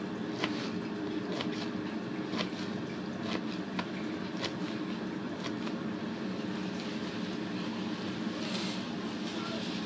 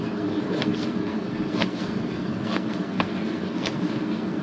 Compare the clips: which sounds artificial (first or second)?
second